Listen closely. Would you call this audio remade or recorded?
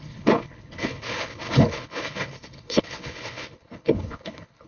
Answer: remade